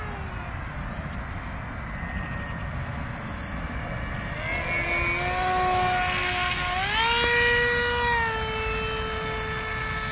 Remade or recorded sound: recorded